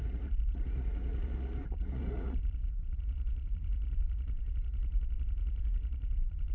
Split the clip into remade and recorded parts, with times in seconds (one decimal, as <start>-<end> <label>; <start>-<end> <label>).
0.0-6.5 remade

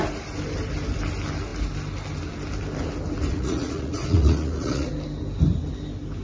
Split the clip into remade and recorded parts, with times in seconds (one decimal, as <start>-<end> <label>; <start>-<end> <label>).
0.0-3.3 recorded; 3.3-4.9 remade; 4.9-6.2 recorded

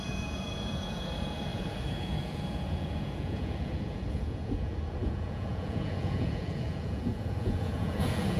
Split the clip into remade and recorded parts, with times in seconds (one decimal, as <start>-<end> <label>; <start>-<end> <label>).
0.0-8.4 remade